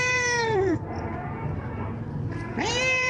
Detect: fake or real fake